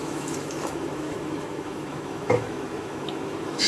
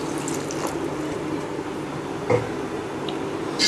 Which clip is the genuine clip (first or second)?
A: second